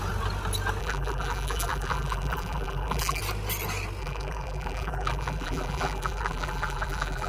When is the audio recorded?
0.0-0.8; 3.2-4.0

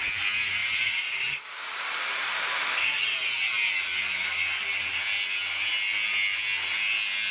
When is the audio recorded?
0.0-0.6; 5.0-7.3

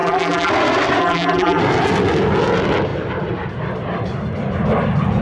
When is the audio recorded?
0.5-1.0; 1.6-5.2

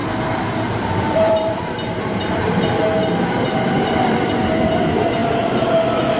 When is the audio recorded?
2.7-6.2